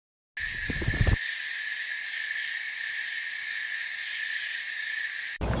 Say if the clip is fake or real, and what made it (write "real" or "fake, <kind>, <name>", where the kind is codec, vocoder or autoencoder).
real